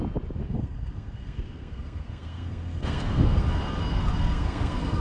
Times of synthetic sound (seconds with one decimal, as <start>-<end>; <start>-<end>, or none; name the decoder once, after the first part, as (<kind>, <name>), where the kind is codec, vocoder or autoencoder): 0.4-3.4 (codec, SNAC); 3.9-5.0